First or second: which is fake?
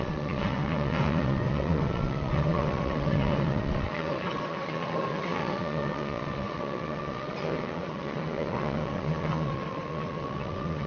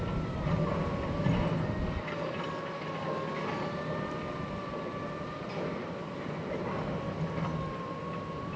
first